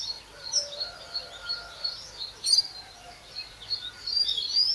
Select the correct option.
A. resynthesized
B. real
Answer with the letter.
B